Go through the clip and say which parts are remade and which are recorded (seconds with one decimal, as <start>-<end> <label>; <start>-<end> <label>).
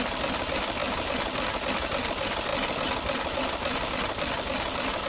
0.0-5.1 recorded